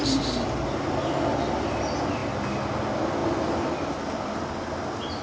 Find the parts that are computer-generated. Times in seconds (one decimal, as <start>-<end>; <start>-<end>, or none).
none